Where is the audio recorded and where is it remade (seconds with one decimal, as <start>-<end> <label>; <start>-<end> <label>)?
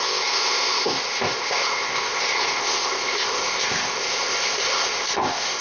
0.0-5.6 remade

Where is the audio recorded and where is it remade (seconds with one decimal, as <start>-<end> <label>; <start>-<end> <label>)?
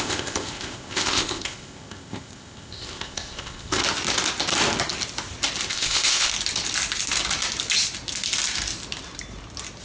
0.0-3.8 remade; 3.8-5.7 recorded; 5.7-6.3 remade; 6.3-9.8 recorded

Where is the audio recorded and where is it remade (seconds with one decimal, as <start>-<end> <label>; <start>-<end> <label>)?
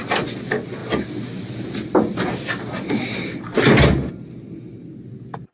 0.0-5.5 recorded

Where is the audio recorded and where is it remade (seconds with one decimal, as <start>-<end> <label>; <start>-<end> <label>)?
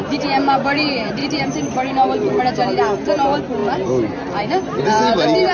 0.0-5.5 recorded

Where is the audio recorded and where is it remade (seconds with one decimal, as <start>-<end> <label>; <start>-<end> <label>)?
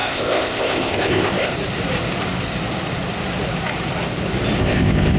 0.0-1.5 remade; 1.5-4.6 recorded; 4.6-5.2 remade